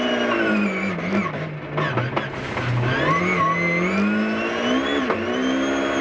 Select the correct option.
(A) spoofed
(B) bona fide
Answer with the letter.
B